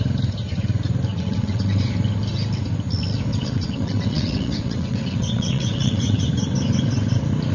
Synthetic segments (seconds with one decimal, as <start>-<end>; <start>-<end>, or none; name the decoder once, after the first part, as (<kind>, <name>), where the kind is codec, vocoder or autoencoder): 1.1-1.8 (vocoder, WaveNeXt); 3.3-6.2